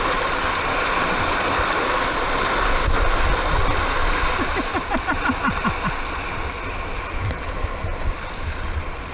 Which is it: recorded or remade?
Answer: recorded